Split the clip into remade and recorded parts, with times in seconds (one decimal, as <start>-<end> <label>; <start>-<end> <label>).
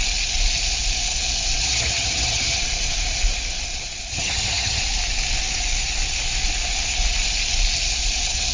0.0-1.6 recorded; 1.6-2.6 remade; 2.6-4.1 recorded; 4.1-4.8 remade; 4.8-8.5 recorded